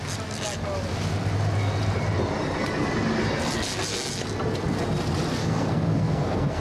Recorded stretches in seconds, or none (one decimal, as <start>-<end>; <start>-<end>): 0.0-5.4